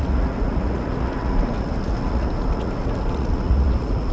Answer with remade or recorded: remade